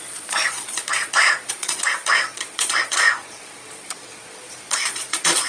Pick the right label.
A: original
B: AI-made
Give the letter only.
B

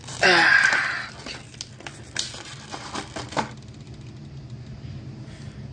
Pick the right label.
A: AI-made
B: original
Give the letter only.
B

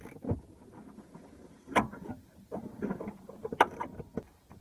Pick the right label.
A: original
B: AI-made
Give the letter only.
A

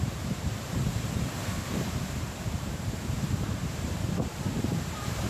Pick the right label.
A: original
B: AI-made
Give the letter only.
B